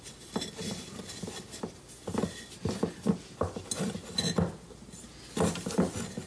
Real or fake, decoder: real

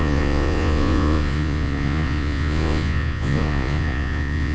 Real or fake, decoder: fake, vocoder, Vocos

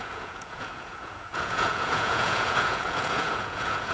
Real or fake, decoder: fake, vocoder, Vocos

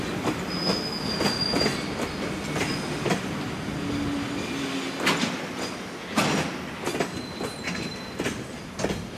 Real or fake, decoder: real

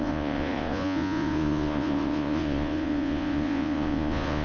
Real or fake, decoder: fake, vocoder, Vocos